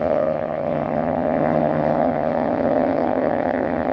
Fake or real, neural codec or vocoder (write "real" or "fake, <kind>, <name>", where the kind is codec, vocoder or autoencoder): fake, vocoder, HiFi-GAN